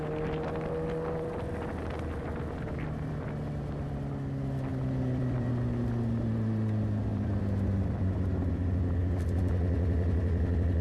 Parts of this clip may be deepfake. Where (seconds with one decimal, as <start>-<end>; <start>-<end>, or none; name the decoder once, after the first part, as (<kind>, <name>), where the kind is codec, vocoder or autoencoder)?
4.7-5.5 (vocoder, BigVGAN v2); 7.1-9.0

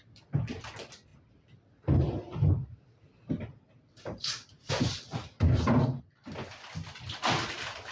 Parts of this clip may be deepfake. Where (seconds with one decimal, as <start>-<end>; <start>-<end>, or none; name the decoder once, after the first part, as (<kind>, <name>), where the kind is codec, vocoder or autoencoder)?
0.0-7.9 (vocoder, BigVGAN v2)

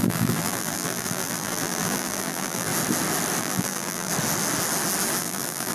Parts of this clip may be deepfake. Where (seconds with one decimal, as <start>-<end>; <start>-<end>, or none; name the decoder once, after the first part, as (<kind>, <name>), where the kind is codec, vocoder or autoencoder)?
0.0-2.7 (vocoder, BigVGAN v2); 3.4-4.1; 5.2-5.7

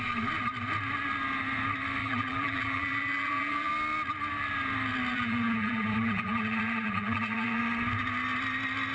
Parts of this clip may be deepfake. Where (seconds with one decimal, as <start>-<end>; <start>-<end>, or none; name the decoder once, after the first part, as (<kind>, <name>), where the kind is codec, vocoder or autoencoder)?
2.0-3.7 (vocoder, BigVGAN v2); 5.1-7.6

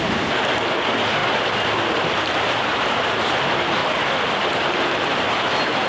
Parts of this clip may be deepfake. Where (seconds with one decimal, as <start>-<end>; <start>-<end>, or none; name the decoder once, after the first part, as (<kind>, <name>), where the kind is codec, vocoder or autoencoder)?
0.0-1.2 (vocoder, BigVGAN v2); 1.9-3.8; 4.5-5.9

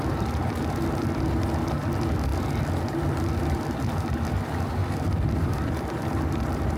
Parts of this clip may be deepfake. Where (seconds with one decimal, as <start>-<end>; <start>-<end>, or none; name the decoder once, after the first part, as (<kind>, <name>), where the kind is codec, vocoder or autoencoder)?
4.8-6.8 (vocoder, BigVGAN v2)

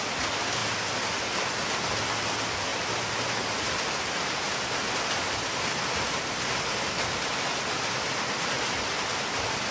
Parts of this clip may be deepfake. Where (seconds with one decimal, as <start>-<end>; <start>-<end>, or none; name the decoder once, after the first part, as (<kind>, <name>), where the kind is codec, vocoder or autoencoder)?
0.6-1.2 (vocoder, BigVGAN v2); 2.7-4.6